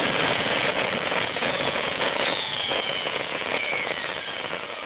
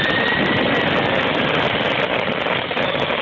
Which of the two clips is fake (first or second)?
first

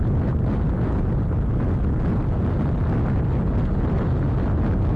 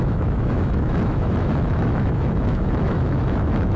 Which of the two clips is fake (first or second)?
second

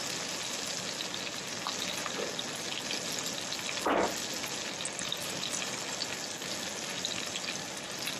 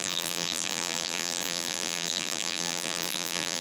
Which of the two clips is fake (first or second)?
second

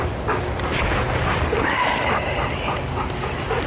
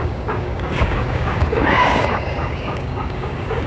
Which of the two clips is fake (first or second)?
second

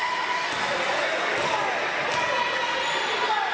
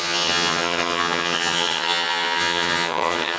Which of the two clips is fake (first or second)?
second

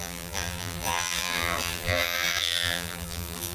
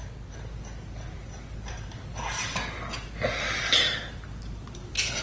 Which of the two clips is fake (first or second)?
first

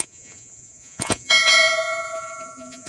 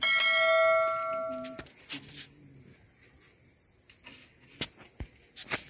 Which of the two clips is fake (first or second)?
first